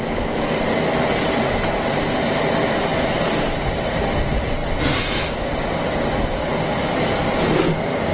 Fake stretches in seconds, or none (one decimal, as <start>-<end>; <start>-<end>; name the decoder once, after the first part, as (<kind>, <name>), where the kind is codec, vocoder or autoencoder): none